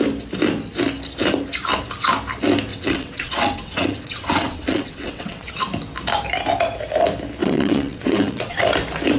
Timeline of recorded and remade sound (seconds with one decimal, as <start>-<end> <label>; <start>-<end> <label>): 0.0-2.7 recorded; 2.7-5.5 remade; 5.5-7.4 recorded; 7.4-8.6 remade; 8.6-9.2 recorded